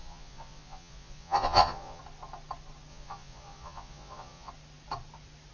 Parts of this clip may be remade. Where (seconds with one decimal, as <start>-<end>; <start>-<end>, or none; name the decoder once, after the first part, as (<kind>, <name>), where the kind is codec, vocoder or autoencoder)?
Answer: 0.0-2.0 (vocoder, Vocos); 2.9-4.5